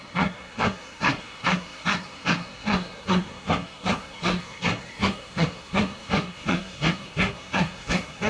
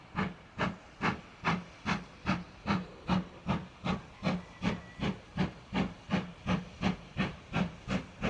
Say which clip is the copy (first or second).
first